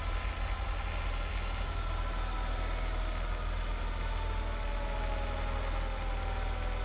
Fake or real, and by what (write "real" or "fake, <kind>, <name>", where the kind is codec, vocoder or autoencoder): real